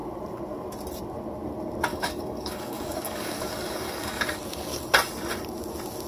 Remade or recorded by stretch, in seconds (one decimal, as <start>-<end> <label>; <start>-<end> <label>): 0.0-1.9 recorded; 1.9-4.4 remade; 4.4-6.1 recorded